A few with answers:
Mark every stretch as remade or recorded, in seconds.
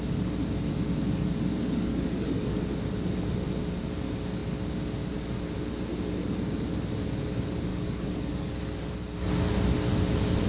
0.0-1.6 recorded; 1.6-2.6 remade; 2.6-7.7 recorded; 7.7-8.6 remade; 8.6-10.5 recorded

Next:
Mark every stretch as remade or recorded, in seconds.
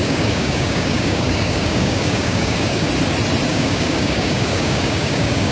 0.0-2.9 remade; 2.9-3.5 recorded; 3.5-5.5 remade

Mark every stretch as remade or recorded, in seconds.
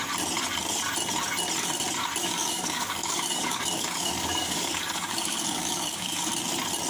0.0-2.2 recorded; 2.2-6.3 remade; 6.3-6.9 recorded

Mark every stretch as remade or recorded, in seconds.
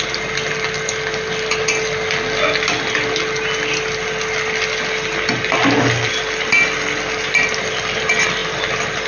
0.0-9.1 recorded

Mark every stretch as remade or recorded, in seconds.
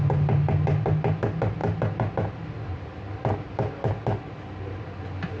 0.0-5.4 recorded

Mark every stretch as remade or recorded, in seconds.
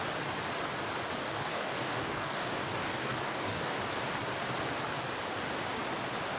0.0-1.2 recorded; 1.2-3.8 remade; 3.8-6.4 recorded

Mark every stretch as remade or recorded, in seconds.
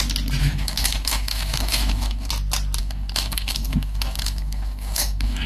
0.0-0.4 recorded; 0.4-2.3 remade; 2.3-2.8 recorded; 2.8-5.5 remade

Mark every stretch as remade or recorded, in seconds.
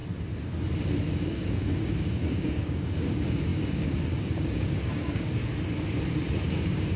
0.0-1.1 recorded; 1.1-5.4 remade; 5.4-6.5 recorded; 6.5-7.0 remade